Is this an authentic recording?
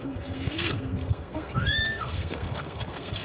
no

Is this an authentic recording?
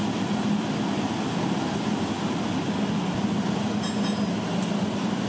yes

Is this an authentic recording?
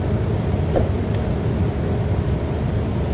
yes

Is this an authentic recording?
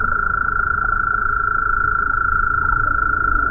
yes